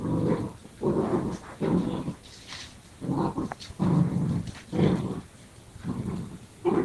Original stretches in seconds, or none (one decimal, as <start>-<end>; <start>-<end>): 0.0-0.6; 1.8-3.5